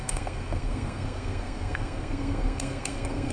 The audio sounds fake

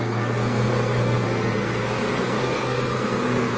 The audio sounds fake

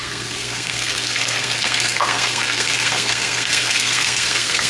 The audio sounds fake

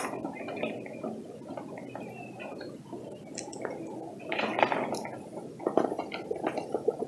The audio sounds real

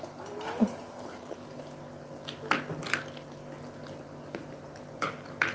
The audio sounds real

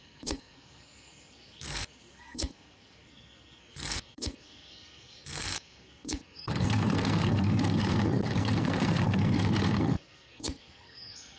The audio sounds fake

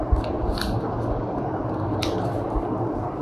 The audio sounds real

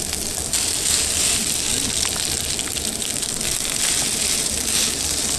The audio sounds real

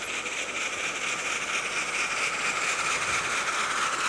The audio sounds real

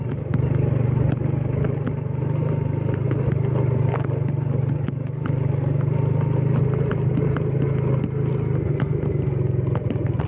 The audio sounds real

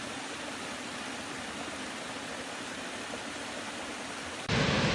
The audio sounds real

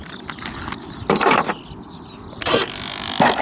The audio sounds real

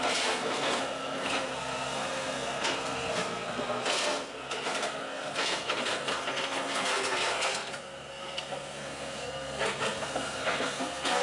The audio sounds fake